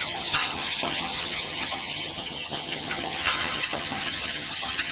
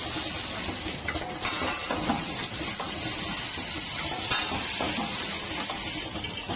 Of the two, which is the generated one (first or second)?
first